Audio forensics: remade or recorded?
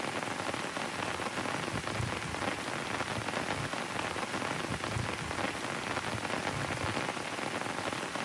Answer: recorded